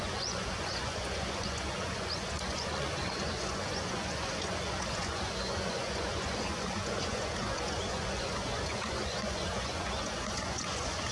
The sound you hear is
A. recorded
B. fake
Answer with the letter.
B